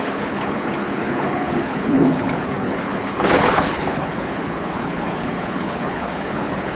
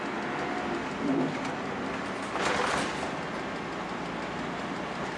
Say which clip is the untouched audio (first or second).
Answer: second